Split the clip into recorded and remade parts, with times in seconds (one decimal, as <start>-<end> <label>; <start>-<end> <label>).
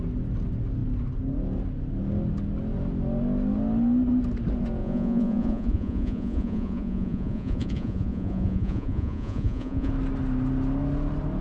0.0-4.8 recorded; 4.8-9.9 remade; 9.9-11.4 recorded